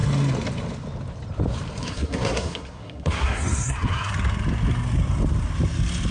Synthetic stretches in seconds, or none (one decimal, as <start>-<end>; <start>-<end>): 1.8-4.1